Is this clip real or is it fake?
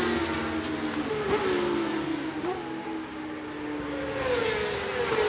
real